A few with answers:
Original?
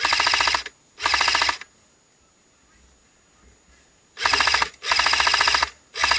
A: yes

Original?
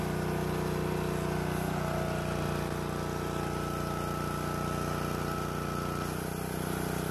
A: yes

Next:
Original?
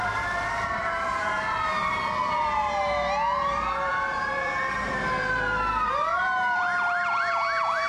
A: no